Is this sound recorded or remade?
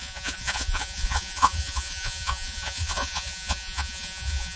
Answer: remade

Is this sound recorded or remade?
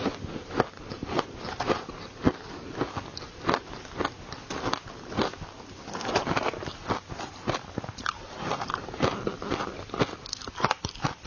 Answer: recorded